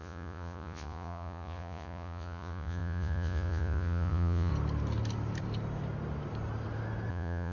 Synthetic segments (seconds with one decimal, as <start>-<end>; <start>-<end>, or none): 0.0-4.5; 7.1-7.5